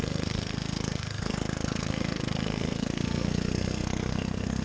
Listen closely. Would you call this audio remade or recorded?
remade